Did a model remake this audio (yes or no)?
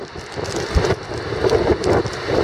no